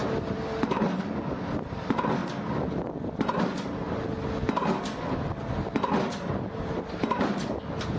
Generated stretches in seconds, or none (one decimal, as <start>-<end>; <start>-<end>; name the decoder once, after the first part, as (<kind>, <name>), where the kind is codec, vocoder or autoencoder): none